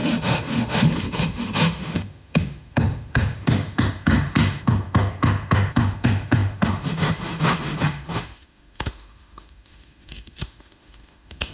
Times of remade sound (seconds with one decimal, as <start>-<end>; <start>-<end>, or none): 0.0-11.5